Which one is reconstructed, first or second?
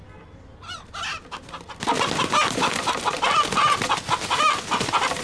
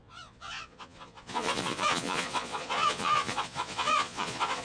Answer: second